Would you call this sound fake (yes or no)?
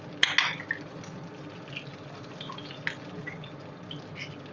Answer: no